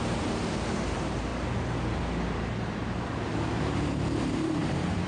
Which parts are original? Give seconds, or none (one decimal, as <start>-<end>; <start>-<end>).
1.3-3.0